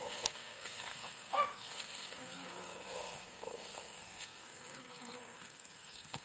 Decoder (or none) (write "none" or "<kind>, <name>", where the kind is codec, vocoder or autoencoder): codec, SNAC